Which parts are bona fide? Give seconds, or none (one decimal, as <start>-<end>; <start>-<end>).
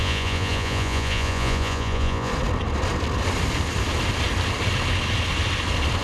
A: 2.3-6.0